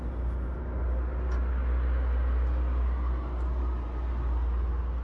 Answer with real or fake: real